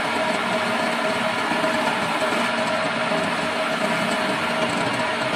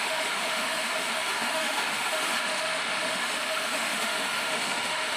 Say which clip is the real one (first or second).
first